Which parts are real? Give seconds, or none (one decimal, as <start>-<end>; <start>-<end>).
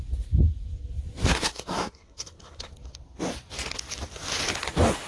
0.0-1.3; 2.7-5.1